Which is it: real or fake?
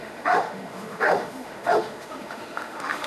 fake